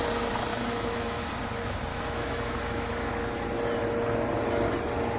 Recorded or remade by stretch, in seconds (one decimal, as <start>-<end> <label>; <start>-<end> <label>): 0.0-0.5 recorded; 0.5-1.3 remade; 1.3-1.9 recorded; 1.9-3.1 remade; 3.1-5.2 recorded